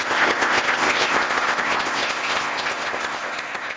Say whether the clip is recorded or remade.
remade